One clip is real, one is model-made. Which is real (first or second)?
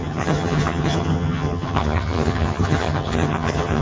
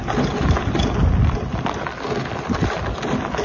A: second